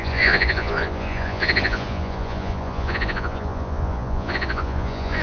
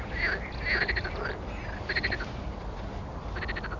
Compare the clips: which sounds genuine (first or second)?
second